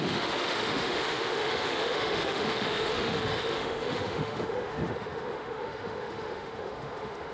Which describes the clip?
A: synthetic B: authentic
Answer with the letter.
A